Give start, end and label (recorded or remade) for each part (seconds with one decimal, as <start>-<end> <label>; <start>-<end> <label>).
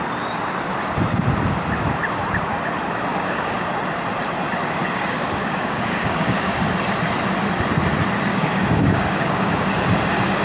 0.0-3.1 recorded; 3.1-3.7 remade; 3.7-4.8 recorded; 4.8-6.7 remade; 6.7-8.3 recorded; 8.3-9.8 remade; 9.8-10.4 recorded